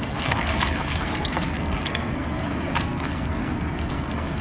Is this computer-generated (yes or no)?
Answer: yes